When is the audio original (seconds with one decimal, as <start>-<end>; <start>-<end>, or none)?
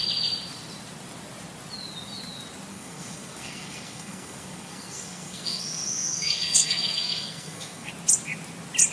0.0-2.7; 7.9-8.9